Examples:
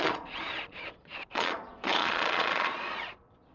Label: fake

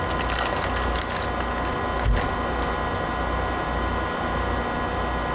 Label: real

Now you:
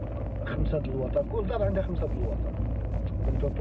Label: real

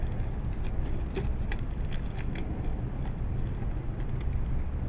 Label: real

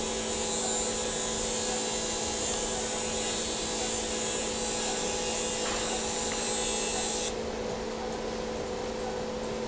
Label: real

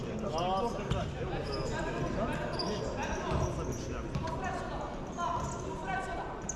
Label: real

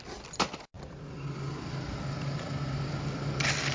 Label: real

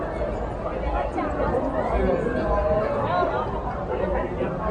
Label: real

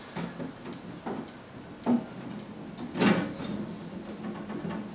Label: real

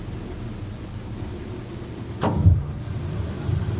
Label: real